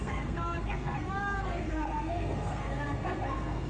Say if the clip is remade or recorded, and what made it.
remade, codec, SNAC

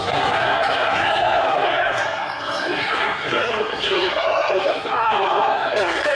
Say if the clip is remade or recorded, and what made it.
remade, codec, SNAC